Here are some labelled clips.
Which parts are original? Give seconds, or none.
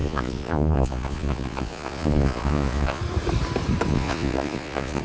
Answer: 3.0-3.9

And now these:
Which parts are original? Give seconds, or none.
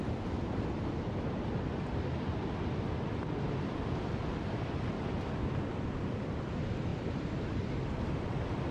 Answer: 0.0-8.7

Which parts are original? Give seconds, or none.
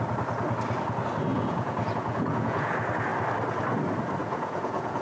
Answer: 0.0-1.3; 2.7-4.2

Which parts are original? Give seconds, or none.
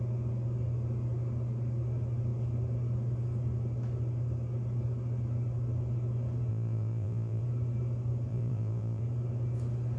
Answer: 0.0-6.5; 7.4-8.3; 9.0-10.0